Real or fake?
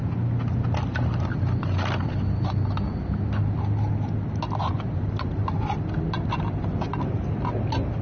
real